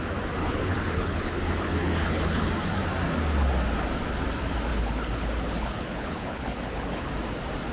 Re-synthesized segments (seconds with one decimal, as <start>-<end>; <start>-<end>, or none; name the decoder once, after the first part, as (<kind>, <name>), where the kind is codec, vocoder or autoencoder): 0.4-2.5 (codec, HILCodec); 4.7-7.1

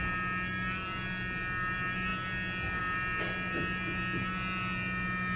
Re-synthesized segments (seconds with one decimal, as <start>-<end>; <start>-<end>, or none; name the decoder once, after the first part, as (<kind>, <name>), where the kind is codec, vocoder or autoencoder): none

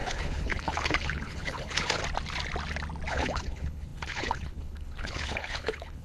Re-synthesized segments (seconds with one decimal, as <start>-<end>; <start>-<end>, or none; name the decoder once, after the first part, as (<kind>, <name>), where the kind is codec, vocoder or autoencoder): 0.0-2.0 (codec, HILCodec); 3.1-6.0

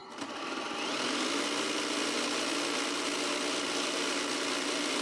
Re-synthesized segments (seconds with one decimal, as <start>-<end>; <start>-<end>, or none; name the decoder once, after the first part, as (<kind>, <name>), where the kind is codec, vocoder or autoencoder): none

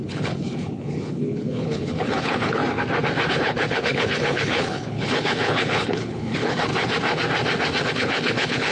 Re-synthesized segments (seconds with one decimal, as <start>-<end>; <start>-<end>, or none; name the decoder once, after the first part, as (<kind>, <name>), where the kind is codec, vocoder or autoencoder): 0.0-2.6 (codec, HILCodec); 3.3-6.7; 7.9-8.7

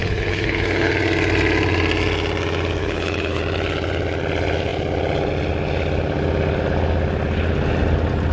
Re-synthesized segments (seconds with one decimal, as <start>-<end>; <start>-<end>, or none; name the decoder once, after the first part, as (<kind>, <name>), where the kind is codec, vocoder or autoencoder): 0.0-0.9 (codec, HILCodec); 2.8-3.4

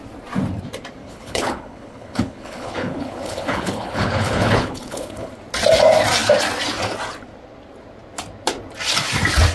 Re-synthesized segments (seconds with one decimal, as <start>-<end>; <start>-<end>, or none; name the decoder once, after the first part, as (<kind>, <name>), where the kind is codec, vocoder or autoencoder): 1.0-5.3 (codec, HILCodec)

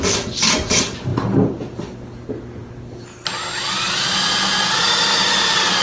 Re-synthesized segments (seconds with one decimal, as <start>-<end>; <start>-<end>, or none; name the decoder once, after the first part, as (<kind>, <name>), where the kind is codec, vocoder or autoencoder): none